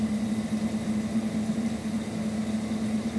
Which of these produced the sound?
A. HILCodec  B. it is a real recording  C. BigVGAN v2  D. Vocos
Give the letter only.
B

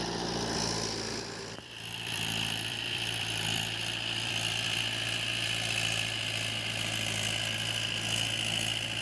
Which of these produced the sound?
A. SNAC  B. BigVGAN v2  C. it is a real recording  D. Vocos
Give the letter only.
B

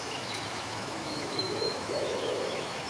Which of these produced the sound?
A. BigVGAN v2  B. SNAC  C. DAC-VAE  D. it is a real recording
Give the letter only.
C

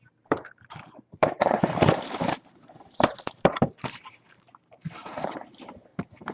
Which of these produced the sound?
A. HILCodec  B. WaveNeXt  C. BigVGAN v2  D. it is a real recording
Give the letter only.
C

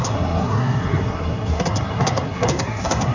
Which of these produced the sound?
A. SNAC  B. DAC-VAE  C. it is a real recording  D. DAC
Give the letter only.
A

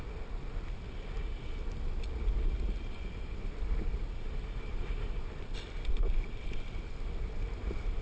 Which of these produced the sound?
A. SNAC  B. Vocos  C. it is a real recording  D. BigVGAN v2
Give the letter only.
C